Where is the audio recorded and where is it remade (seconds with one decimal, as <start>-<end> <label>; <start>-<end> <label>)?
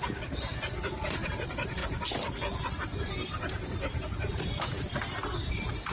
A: 0.0-1.8 remade; 1.8-2.7 recorded; 2.7-4.5 remade; 4.5-5.5 recorded; 5.5-5.9 remade